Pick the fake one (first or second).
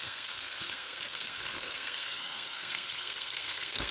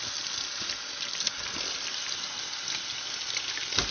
first